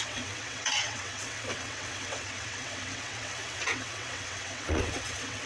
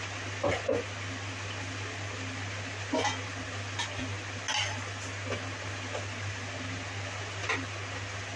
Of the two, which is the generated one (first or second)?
first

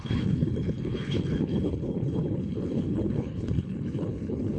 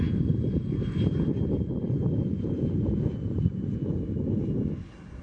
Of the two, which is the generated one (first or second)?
first